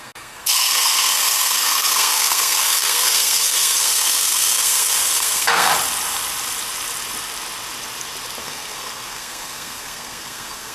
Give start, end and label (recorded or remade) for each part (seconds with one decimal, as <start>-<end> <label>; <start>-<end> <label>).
0.0-5.7 remade; 5.7-8.4 recorded; 8.4-10.7 remade